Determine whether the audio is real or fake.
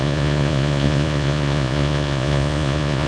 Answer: fake